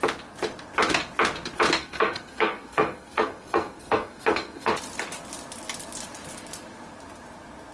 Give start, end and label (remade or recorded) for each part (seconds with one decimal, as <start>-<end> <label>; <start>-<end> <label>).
0.0-1.8 recorded; 1.8-4.7 remade; 4.7-7.7 recorded